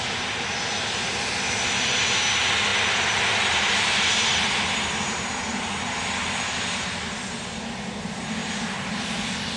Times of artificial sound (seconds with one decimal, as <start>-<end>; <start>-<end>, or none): none